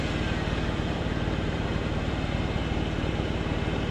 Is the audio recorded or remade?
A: remade